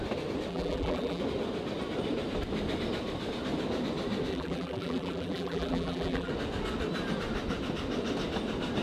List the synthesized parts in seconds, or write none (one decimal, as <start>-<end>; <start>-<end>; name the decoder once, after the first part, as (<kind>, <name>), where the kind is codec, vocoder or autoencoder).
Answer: 0.5-1.2 (vocoder, BigVGAN v2); 4.3-6.3